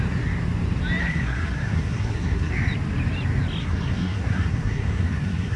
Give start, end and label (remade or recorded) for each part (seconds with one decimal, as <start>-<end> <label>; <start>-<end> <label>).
0.0-1.0 recorded; 1.0-2.5 remade; 2.5-3.6 recorded; 3.6-5.6 remade